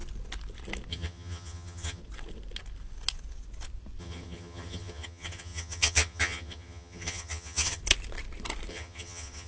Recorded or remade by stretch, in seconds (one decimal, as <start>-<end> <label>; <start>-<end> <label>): 0.0-0.9 recorded; 0.9-2.0 remade; 2.0-4.0 recorded; 4.0-7.8 remade; 7.8-8.7 recorded; 8.7-9.5 remade